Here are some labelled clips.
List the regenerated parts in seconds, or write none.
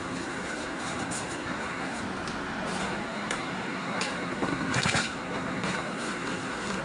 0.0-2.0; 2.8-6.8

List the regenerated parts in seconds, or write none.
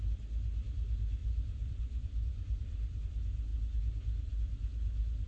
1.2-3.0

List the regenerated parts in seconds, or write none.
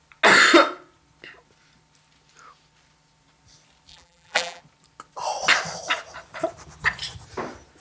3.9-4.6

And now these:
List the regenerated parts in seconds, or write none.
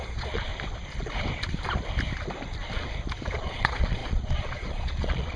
0.0-0.5; 3.4-5.4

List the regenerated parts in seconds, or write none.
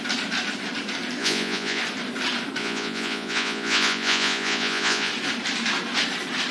1.2-1.8; 2.6-5.1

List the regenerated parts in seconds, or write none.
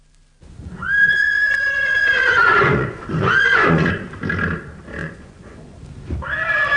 1.0-3.9; 5.0-5.8